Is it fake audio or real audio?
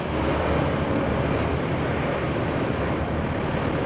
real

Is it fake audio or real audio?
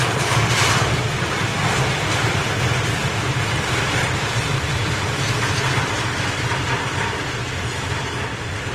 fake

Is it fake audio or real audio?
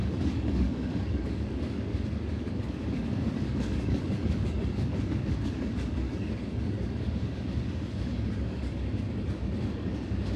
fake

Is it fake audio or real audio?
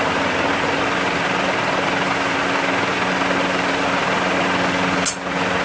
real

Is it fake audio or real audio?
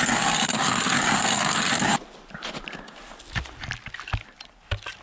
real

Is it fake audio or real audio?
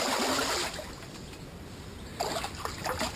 real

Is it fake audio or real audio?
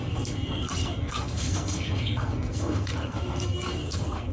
fake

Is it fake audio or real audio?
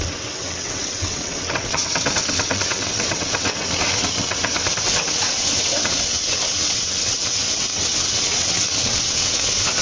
fake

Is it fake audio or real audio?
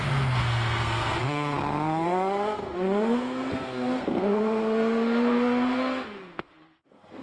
fake